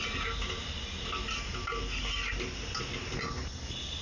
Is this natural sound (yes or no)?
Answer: yes